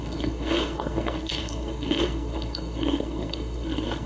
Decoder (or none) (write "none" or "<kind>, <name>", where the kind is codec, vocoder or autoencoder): codec, SNAC